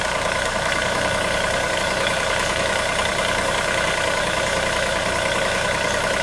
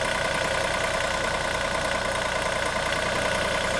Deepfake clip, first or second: first